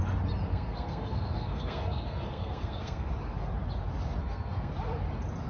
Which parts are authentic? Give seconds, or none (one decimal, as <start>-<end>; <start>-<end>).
0.0-0.5; 3.1-4.2; 4.7-5.5